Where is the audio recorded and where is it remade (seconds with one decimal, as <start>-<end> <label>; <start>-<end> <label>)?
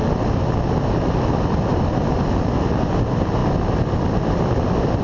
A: 0.0-5.0 recorded